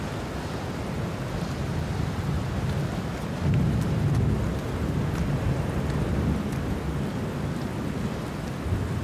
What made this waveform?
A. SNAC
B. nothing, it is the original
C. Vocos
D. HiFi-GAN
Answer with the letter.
B